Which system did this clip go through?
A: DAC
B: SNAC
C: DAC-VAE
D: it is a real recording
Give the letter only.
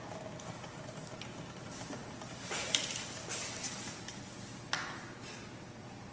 D